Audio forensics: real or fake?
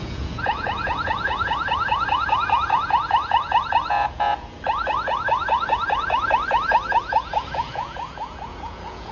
fake